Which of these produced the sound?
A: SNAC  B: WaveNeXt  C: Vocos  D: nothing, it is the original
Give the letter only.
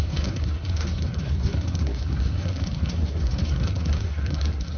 A